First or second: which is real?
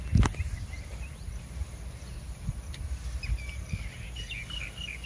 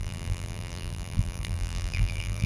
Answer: first